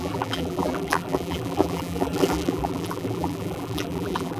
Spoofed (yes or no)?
yes